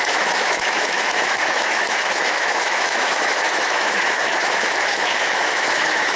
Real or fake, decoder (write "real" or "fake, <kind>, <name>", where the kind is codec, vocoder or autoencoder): fake, autoencoder, DAC-VAE